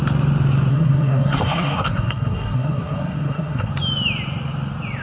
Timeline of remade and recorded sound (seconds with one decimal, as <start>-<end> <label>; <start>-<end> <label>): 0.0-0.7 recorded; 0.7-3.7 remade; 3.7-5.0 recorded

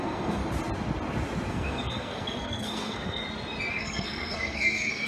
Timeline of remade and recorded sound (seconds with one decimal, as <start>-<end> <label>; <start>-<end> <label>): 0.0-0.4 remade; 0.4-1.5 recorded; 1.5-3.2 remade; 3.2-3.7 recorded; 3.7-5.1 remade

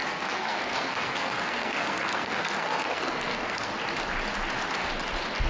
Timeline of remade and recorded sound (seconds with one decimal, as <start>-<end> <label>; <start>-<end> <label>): 0.0-3.7 remade; 3.7-5.5 recorded

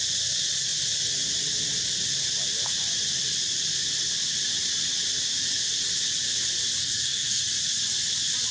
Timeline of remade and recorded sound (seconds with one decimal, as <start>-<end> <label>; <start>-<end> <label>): 0.0-6.8 recorded; 6.8-7.4 remade; 7.4-8.5 recorded

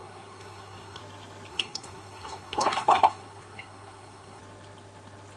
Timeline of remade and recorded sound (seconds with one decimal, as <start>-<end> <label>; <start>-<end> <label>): 0.0-1.0 remade; 1.0-1.5 recorded; 1.5-4.4 remade; 4.4-5.4 recorded